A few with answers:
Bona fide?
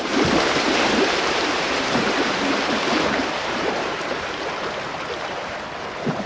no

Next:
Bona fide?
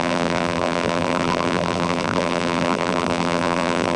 no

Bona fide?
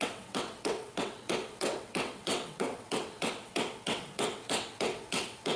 no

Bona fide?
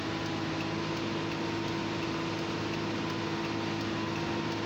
yes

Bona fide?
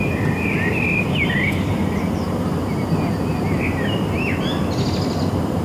yes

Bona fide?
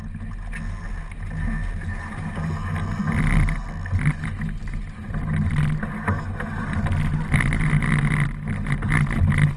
yes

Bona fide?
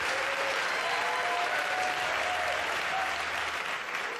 yes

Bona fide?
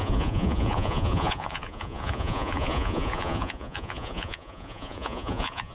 no